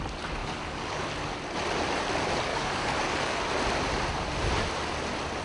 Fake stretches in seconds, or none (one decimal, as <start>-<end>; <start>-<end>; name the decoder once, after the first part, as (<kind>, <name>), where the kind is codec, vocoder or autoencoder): 0.4-1.0 (codec, DAC); 2.5-3.4